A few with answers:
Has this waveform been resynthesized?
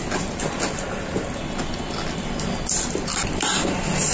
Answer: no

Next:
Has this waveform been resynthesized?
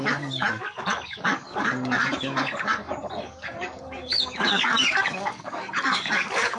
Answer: yes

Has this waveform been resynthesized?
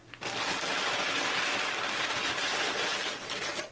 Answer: no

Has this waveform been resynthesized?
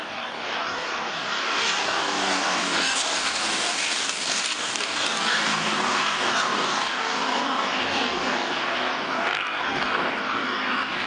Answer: yes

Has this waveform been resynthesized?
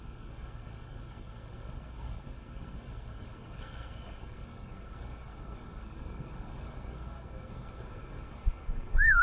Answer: yes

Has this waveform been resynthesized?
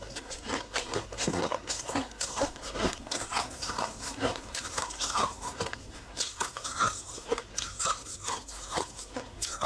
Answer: yes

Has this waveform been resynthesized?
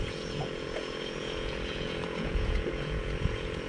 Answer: yes